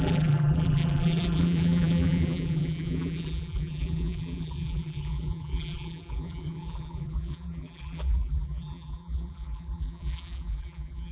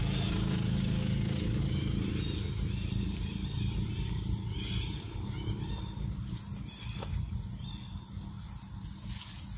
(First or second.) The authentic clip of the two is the second